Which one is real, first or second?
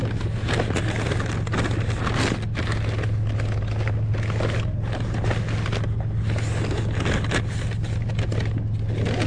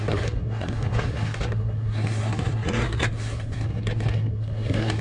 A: first